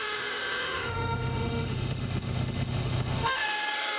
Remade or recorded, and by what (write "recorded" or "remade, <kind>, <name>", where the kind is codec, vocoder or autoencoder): remade, autoencoder, DAC-VAE